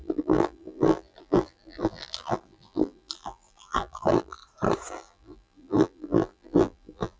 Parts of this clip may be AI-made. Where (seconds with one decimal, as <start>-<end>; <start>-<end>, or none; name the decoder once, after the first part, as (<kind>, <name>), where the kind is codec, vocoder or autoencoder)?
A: 0.0-4.4 (vocoder, BigVGAN v2); 4.9-7.2